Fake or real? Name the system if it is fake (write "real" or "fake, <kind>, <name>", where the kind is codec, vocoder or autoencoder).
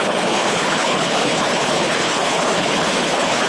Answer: fake, codec, HILCodec